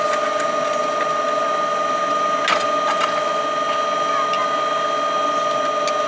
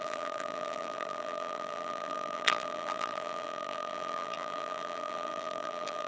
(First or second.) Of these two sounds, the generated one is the second